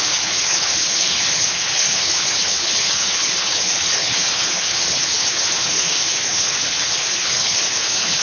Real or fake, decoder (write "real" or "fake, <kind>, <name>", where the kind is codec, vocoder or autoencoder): fake, codec, HILCodec